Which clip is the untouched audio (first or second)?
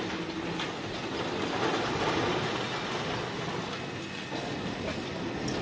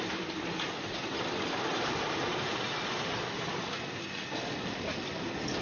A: first